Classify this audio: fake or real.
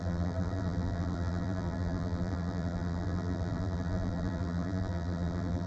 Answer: fake